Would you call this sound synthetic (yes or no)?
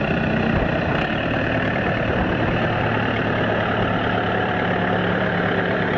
yes